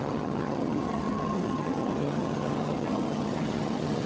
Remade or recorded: remade